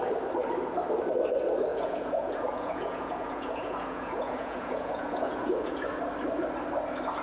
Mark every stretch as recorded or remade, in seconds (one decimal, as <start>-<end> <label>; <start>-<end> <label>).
0.0-1.7 recorded; 1.7-6.0 remade; 6.0-7.2 recorded

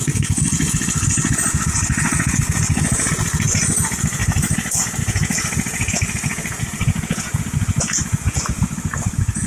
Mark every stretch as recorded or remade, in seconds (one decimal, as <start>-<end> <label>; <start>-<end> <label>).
0.0-9.5 remade